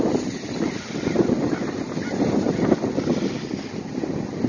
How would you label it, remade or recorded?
recorded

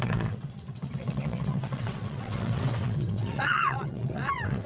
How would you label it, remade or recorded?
remade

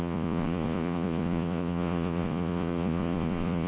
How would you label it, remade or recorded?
remade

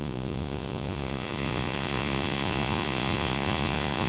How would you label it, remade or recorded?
remade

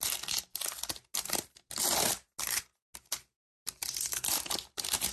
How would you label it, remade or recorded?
recorded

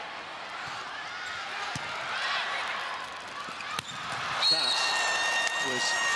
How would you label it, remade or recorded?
remade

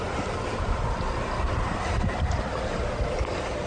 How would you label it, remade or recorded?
recorded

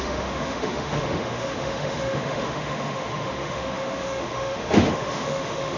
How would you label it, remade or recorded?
remade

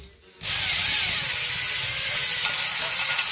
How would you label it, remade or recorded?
recorded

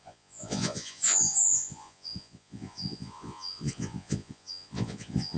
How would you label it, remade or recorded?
remade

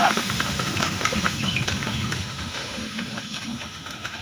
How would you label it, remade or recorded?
remade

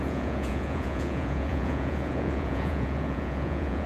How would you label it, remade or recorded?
remade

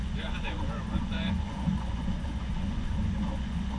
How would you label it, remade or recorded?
remade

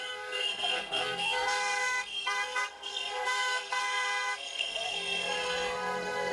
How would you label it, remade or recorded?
remade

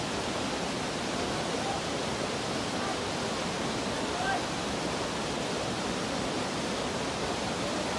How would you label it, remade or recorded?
recorded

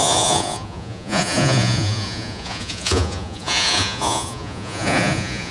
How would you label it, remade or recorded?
remade